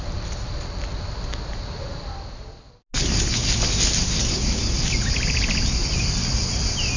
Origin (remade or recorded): recorded